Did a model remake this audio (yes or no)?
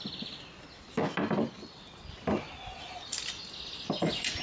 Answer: no